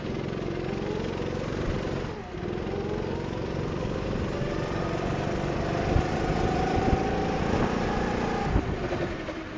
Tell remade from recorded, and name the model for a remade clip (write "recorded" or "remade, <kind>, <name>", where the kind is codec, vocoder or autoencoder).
recorded